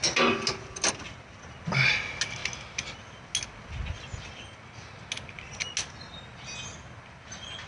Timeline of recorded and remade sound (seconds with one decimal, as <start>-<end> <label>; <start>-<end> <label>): 0.0-7.7 recorded